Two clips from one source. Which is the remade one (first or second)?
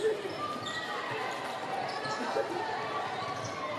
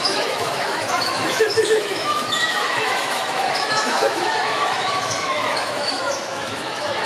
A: second